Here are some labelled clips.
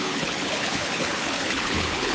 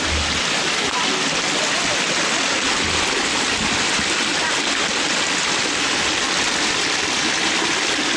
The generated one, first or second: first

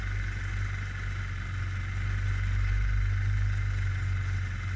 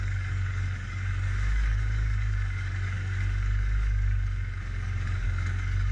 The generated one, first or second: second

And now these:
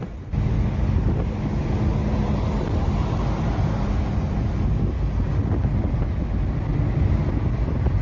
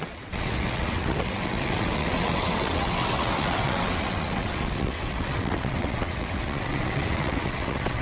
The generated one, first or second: second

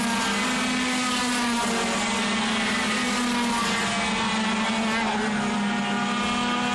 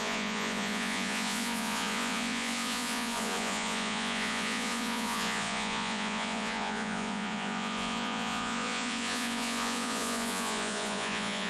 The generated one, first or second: second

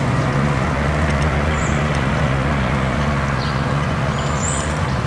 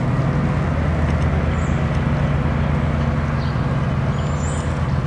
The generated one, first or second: first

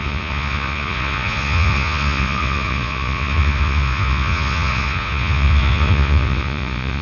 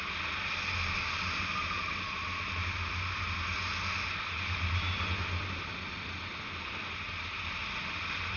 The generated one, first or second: first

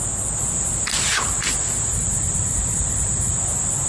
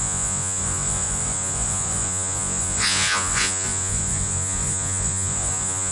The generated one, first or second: second